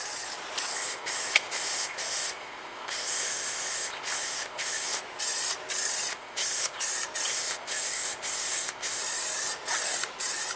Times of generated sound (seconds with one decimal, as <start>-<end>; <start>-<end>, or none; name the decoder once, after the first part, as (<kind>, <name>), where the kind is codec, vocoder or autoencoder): 0.7-5.0 (codec, ZipCodec); 6.1-6.8; 7.3-9.0